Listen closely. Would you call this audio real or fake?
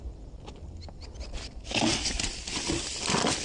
real